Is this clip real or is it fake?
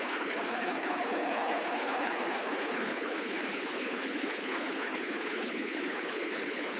fake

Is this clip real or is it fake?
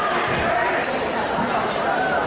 real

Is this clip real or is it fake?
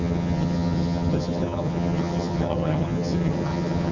fake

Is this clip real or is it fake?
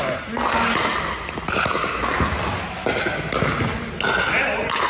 real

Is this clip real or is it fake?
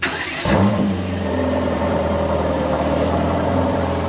fake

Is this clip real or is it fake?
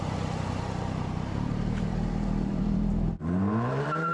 fake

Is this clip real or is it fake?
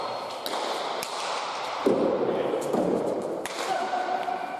fake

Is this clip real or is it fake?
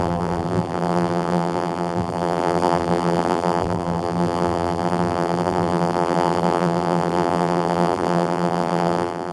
fake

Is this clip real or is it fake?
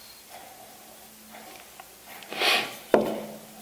real